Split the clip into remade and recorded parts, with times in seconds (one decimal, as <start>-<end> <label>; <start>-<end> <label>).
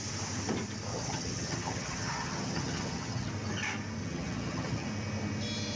0.0-0.9 recorded; 0.9-3.3 remade; 3.3-4.0 recorded; 4.0-4.9 remade; 4.9-5.8 recorded